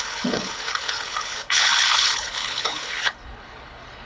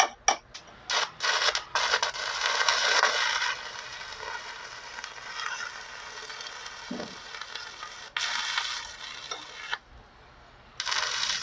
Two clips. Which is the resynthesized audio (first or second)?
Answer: first